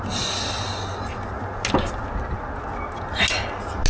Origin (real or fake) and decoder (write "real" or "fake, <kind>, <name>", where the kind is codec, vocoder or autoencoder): real